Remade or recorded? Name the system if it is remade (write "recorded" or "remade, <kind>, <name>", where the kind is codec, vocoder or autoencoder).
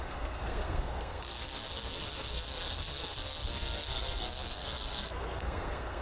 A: remade, codec, SNAC